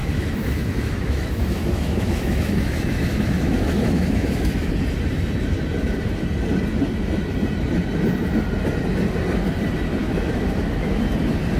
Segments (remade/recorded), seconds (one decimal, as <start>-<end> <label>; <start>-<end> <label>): 0.0-4.7 remade; 4.7-10.0 recorded; 10.0-11.0 remade; 11.0-11.6 recorded